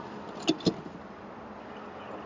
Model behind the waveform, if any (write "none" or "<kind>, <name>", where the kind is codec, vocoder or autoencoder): none